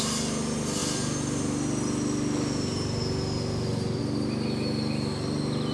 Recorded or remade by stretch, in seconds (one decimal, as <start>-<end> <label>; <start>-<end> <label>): 0.0-5.7 recorded